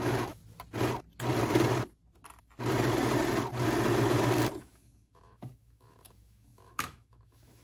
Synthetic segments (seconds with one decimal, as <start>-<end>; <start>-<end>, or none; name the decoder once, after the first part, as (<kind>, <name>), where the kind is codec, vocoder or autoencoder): 0.0-0.4 (autoencoder, DAC-VAE); 4.6-7.6